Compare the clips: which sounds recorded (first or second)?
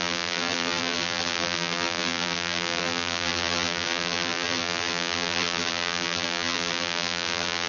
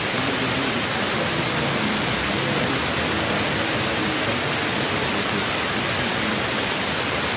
second